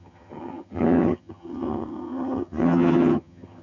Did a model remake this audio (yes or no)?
yes